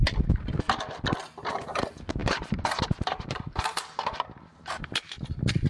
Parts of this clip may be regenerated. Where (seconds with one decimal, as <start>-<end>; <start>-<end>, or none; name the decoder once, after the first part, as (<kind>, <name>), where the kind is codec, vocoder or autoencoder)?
2.2-5.7 (vocoder, BigVGAN v2)